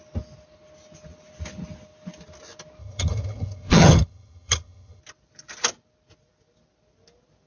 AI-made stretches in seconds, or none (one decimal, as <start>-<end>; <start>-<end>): 2.8-5.0